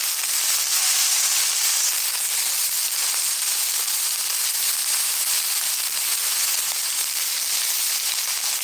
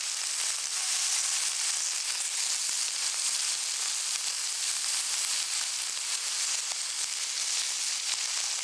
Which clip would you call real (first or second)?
second